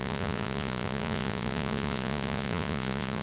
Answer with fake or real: fake